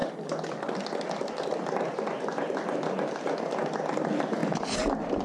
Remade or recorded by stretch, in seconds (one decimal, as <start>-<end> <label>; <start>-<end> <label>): 0.0-5.2 recorded